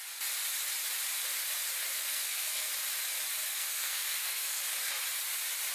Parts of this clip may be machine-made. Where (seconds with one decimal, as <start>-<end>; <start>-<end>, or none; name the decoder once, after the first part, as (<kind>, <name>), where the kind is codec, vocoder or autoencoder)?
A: 1.9-2.7 (codec, SNAC); 3.5-4.6